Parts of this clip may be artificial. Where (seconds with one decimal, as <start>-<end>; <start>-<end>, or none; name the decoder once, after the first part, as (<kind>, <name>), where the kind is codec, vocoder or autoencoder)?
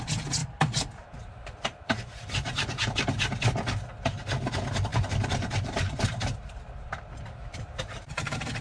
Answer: 0.4-2.9 (vocoder, BigVGAN v2); 4.9-8.6